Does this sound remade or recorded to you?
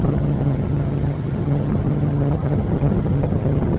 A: remade